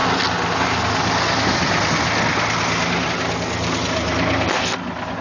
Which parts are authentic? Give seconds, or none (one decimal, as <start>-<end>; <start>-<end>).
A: 0.0-5.2